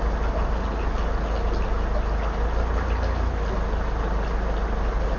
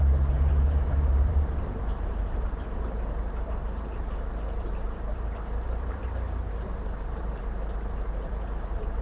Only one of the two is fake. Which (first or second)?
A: second